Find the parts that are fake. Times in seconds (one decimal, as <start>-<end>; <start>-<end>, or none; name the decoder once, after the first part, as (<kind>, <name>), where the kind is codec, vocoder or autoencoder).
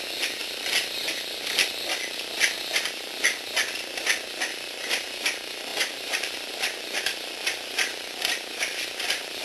0.4-2.8 (vocoder, BigVGAN v2); 5.7-8.5